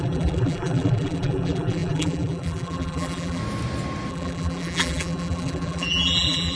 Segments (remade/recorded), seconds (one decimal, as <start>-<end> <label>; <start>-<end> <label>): 0.0-3.4 remade; 3.4-4.1 recorded; 4.1-6.6 remade